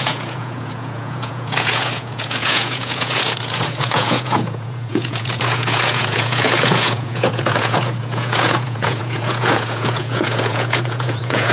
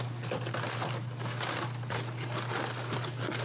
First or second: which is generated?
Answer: first